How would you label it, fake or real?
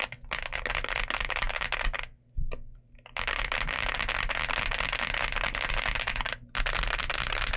real